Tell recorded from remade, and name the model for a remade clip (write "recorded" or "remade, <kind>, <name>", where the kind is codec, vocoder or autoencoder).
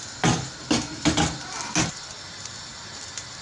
recorded